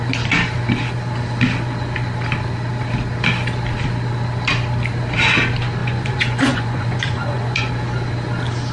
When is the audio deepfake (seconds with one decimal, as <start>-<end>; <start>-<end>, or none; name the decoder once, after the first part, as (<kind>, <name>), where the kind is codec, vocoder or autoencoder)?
5.8-7.7 (vocoder, Vocos)